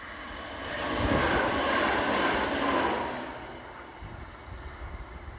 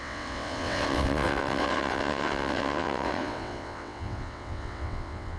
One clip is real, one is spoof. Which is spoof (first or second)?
second